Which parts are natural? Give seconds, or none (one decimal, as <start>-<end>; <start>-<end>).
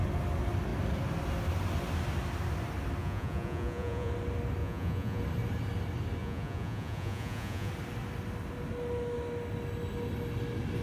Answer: 0.0-3.0; 4.1-4.6; 5.2-6.2; 7.7-10.8